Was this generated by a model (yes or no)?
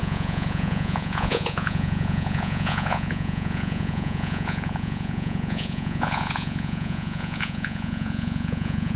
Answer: yes